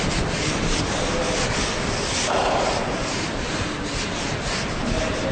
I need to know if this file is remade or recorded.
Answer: recorded